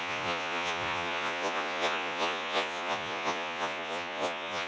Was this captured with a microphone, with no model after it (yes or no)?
no